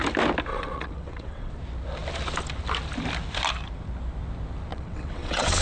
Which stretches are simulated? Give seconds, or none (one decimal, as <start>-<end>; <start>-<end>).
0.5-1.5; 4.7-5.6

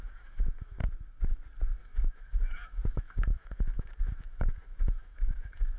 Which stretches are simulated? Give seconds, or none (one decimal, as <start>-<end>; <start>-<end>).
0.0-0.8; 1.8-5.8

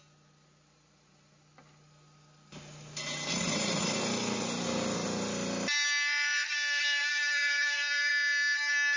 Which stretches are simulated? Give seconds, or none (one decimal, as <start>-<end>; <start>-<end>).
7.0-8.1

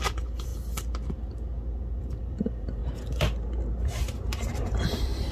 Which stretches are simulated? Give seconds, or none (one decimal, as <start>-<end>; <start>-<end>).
0.0-0.5; 2.0-2.8; 4.0-5.3

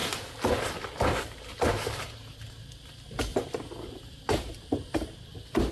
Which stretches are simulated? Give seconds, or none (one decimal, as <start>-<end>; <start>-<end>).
0.0-0.9; 3.3-4.2

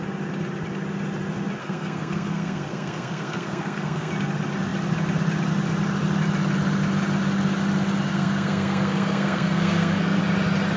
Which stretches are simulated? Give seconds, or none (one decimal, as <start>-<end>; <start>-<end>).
1.6-4.1; 8.1-10.2

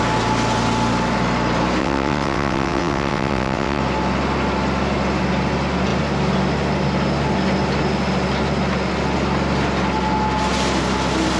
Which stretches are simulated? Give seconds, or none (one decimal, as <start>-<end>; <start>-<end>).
1.8-3.8

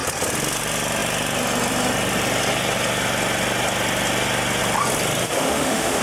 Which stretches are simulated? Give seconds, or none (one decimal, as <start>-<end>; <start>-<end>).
5.2-6.0